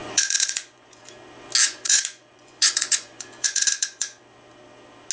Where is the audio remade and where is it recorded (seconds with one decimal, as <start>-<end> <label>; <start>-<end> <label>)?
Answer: 0.0-1.1 remade; 1.1-1.6 recorded; 1.6-4.2 remade; 4.2-5.1 recorded